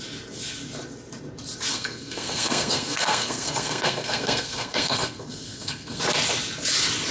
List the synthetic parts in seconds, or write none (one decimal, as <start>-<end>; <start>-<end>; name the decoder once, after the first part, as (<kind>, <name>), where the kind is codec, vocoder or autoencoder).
1.7-6.0 (codec, SNAC)